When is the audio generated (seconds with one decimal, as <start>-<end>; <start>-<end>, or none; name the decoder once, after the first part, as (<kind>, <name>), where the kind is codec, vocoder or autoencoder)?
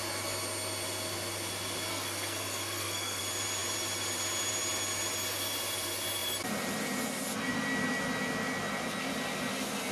1.9-3.2 (codec, SNAC)